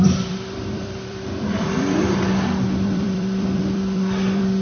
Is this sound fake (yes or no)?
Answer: yes